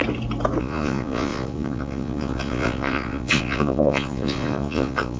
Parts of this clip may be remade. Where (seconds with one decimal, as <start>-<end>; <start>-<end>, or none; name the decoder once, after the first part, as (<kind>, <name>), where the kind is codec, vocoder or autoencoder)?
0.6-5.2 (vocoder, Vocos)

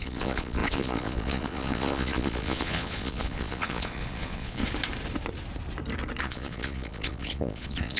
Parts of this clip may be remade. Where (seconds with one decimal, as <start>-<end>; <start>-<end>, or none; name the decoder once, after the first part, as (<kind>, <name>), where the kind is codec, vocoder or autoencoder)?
0.0-4.6 (vocoder, Vocos); 6.2-8.0

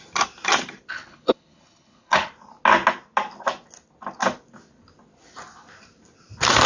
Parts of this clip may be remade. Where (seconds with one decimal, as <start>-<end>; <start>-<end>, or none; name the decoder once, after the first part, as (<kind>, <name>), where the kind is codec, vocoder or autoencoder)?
0.9-2.3 (codec, HILCodec)

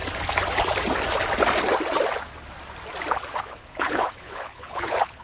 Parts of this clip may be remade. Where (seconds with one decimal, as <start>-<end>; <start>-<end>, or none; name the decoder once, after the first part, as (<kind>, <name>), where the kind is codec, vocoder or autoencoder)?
3.1-5.2 (codec, HILCodec)